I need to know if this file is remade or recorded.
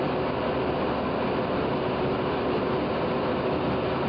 recorded